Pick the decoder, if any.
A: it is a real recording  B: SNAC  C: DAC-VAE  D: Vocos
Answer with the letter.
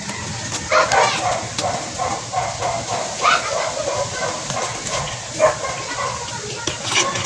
A